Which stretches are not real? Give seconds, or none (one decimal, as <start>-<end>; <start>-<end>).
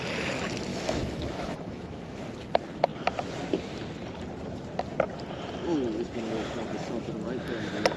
0.7-2.2